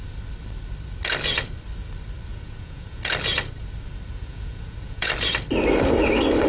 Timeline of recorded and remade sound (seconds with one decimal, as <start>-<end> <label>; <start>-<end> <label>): 0.0-2.3 recorded; 2.3-3.0 remade; 3.0-4.1 recorded; 4.1-5.1 remade; 5.1-6.5 recorded

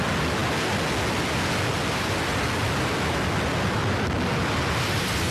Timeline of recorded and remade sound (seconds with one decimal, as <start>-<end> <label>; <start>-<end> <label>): 0.0-5.3 recorded